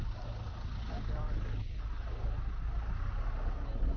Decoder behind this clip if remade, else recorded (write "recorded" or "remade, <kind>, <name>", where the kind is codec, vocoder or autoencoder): recorded